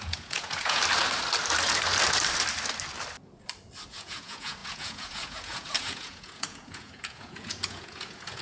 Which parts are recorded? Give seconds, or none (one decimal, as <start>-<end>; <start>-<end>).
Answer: 0.8-3.9